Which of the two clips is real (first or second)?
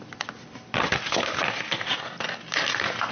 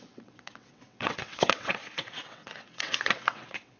first